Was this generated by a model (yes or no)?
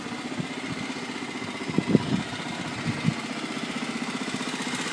no